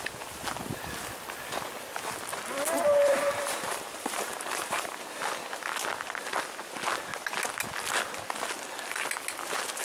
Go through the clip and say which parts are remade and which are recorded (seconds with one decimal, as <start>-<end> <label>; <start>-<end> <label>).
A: 0.0-3.0 recorded; 3.0-5.2 remade; 5.2-9.8 recorded